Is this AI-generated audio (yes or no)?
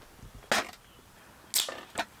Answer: no